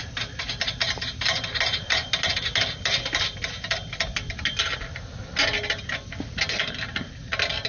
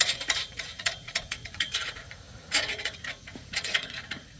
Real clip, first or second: first